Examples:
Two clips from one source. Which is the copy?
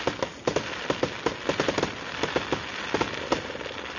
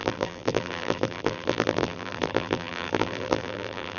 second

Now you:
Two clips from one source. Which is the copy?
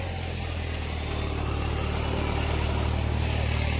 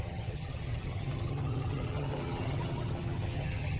second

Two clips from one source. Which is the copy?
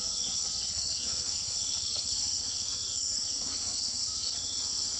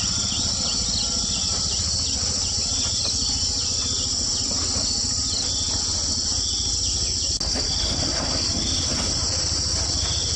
first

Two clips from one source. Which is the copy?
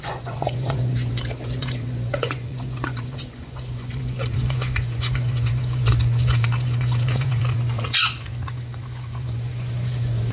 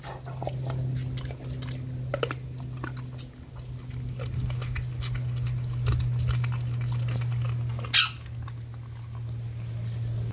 first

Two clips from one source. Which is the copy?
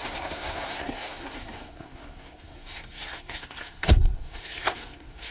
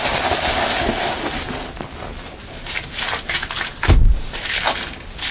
first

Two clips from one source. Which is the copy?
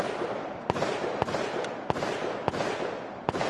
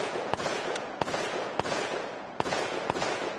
second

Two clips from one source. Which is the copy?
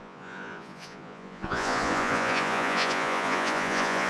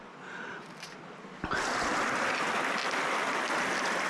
first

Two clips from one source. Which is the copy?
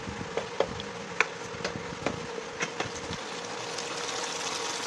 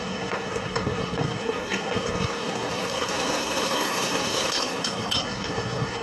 second